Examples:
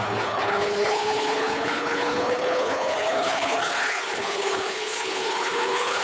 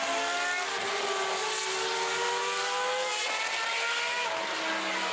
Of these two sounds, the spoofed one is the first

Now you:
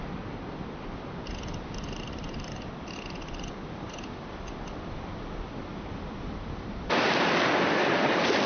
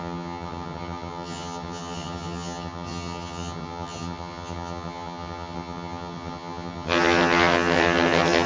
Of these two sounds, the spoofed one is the second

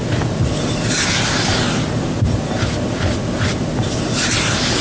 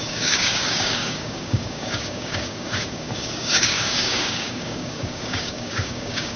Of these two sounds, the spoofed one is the second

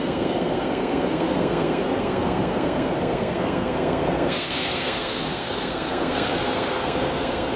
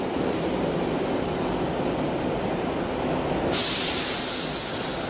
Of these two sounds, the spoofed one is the first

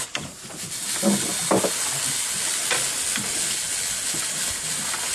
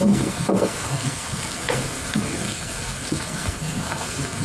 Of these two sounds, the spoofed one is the second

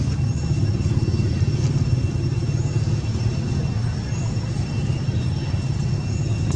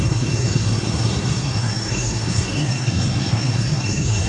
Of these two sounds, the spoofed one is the second